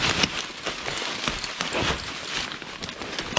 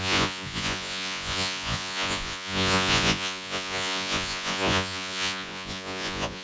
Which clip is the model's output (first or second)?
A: second